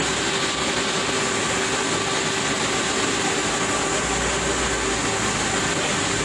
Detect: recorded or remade recorded